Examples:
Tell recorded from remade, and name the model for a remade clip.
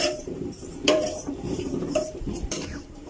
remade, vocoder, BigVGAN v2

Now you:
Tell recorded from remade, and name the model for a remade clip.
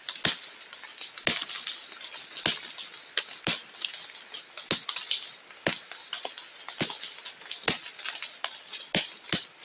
recorded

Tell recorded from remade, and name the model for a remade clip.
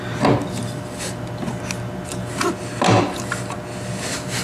recorded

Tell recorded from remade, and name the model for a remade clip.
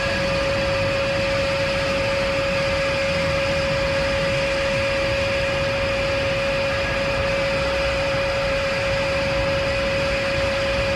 recorded